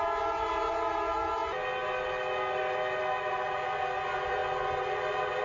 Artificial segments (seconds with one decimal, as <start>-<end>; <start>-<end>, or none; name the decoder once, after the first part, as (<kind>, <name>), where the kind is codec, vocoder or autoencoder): none

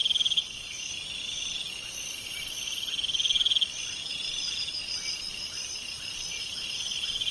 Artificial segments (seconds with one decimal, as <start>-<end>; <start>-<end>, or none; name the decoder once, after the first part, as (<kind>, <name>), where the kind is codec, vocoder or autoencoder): 0.4-0.9 (codec, HILCodec)

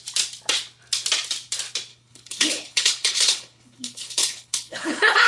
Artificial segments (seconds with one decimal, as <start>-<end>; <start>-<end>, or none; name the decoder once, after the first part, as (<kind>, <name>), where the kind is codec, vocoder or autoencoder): 1.9-5.3 (codec, HILCodec)

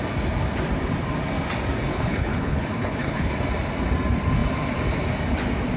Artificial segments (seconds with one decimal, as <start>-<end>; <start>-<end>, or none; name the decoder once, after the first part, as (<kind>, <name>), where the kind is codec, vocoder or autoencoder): 1.9-3.3 (codec, HILCodec)

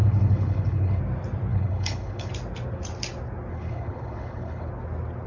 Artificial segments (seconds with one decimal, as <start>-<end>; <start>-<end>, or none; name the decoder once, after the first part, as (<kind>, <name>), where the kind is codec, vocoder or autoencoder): 0.0-1.0 (codec, HILCodec); 1.5-2.3; 3.5-4.7